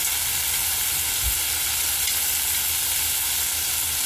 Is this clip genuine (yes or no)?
yes